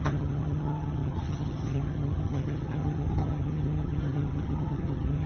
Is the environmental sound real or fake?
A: fake